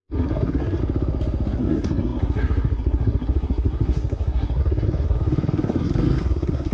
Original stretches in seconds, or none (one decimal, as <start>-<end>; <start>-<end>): 0.8-1.6